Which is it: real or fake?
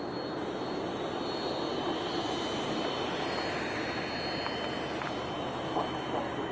real